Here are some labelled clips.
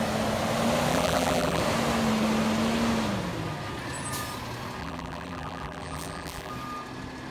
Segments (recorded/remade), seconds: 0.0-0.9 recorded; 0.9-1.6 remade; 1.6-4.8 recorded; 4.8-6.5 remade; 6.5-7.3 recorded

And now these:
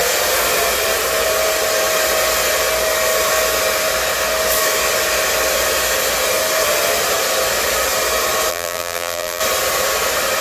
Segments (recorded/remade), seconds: 0.0-8.5 recorded; 8.5-9.4 remade; 9.4-10.4 recorded

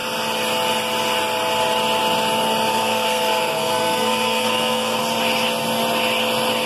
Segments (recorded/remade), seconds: 0.0-2.7 recorded; 2.7-5.0 remade; 5.0-6.7 recorded